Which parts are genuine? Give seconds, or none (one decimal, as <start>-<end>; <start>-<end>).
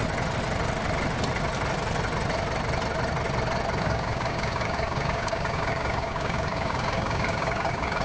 0.0-3.8